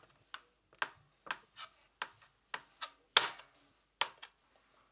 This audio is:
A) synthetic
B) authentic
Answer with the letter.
B